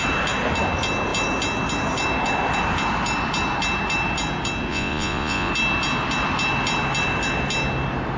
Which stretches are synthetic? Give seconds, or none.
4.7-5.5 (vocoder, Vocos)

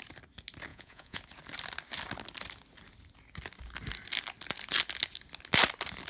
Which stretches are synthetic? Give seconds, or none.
0.7-1.2 (vocoder, Vocos)

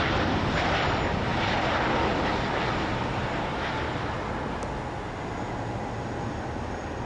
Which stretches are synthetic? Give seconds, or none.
none